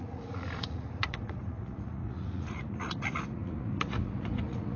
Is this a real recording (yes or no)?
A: no